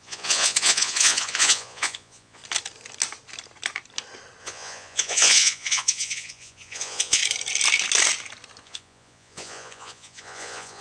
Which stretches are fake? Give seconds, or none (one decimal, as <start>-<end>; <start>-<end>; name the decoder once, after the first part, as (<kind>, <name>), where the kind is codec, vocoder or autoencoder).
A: 0.0-2.4 (vocoder, Vocos); 4.4-7.2; 8.6-10.8